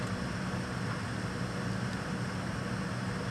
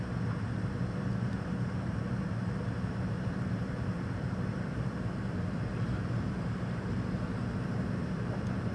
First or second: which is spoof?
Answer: second